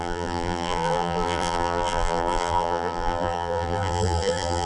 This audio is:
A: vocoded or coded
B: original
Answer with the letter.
A